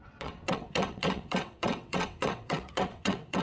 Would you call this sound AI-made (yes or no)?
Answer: yes